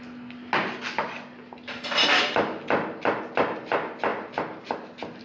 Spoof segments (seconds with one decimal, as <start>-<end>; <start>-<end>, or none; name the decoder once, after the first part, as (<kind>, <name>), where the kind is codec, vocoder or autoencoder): none